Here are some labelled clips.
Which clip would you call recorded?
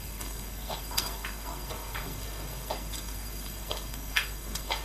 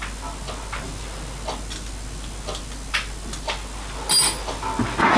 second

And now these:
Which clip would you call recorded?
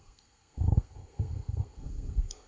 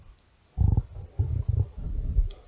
second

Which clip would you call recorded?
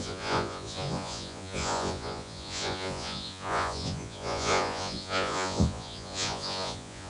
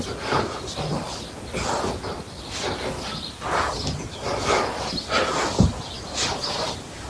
second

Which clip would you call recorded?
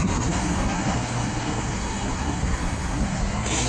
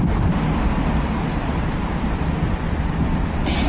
second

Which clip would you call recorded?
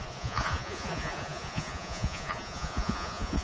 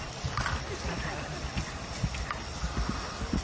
second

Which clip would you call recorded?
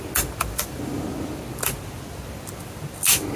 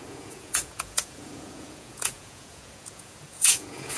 first